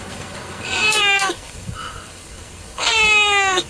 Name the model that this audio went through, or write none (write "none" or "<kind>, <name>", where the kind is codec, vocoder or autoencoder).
codec, SNAC